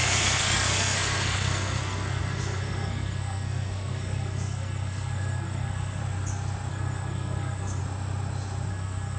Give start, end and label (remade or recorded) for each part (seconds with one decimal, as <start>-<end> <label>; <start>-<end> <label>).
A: 0.0-6.0 remade; 6.0-6.7 recorded; 6.7-7.8 remade; 7.8-8.7 recorded; 8.7-9.2 remade